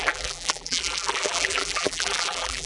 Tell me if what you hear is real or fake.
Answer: fake